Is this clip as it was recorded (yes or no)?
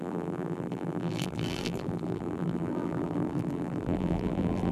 no